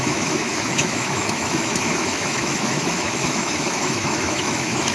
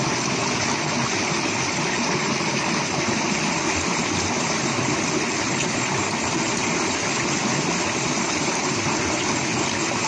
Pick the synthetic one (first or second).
first